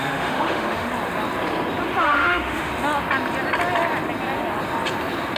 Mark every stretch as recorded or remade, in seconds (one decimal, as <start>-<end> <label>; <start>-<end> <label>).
0.0-0.9 remade; 0.9-2.0 recorded; 2.0-2.7 remade; 2.7-5.4 recorded